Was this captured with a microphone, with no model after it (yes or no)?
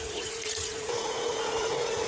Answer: no